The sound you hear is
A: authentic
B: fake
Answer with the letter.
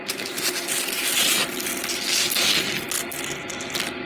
A